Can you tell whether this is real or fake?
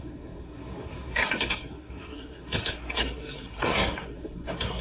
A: fake